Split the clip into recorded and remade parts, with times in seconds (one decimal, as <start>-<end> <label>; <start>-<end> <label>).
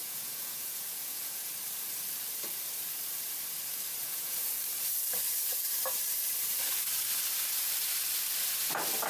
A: 0.0-1.5 remade; 1.5-4.0 recorded; 4.0-4.5 remade; 4.5-9.1 recorded